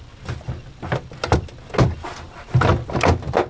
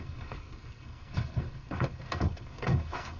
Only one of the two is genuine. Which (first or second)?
first